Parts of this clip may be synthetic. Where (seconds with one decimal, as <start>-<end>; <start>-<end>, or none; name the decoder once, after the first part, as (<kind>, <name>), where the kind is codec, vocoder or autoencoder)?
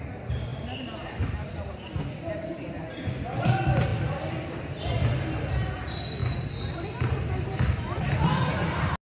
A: none